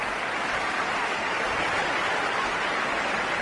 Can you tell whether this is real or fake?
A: real